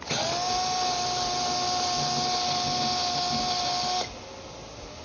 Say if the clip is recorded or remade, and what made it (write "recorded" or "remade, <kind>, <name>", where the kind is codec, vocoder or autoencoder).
recorded